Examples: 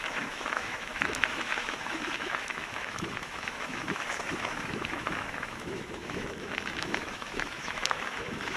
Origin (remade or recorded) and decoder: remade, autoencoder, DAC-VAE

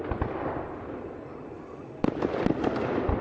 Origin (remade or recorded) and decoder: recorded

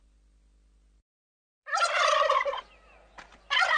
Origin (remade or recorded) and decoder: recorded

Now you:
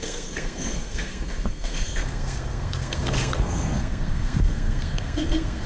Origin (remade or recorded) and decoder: remade, codec, SNAC